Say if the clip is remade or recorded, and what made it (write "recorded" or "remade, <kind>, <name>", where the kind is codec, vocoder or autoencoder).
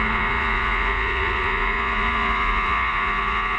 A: remade, vocoder, Vocos